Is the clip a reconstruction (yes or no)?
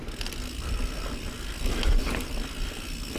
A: no